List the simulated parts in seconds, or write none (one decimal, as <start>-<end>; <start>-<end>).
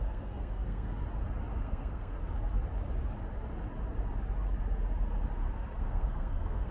0.0-0.9; 1.6-2.2; 5.8-6.7